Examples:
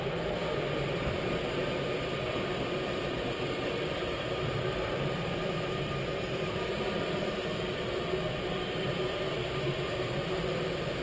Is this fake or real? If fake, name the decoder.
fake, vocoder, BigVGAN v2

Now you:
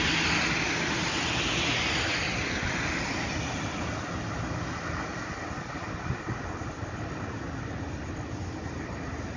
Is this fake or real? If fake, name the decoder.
real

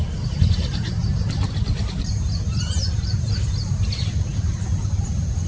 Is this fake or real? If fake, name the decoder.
fake, vocoder, BigVGAN v2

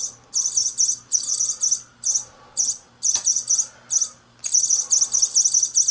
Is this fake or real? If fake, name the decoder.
real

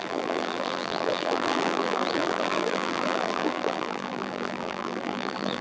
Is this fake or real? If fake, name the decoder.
fake, vocoder, BigVGAN v2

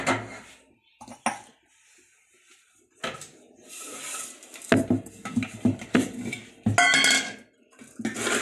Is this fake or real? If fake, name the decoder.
real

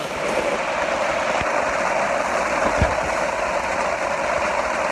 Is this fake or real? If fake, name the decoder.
real